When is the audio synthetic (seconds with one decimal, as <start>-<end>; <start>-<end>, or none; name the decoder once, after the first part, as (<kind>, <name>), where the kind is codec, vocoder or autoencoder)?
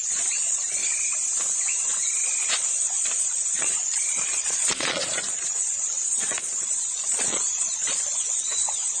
0.0-0.8 (vocoder, Vocos); 2.6-9.0